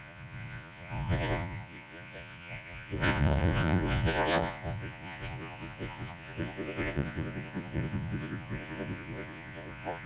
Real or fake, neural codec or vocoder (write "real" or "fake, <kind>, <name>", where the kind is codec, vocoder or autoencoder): fake, vocoder, Vocos